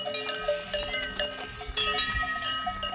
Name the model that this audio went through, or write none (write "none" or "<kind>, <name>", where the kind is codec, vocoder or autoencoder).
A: none